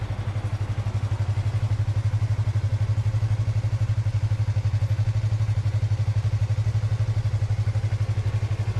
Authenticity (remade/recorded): recorded